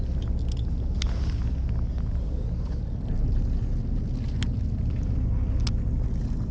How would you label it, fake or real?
real